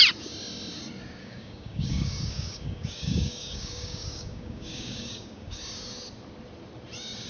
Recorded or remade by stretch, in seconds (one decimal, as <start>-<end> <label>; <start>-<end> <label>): 0.0-1.2 recorded; 1.2-5.6 remade; 5.6-7.3 recorded